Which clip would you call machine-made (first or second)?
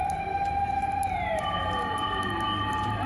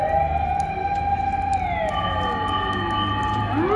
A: first